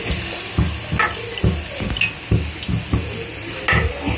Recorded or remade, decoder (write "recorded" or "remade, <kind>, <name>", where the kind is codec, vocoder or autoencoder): recorded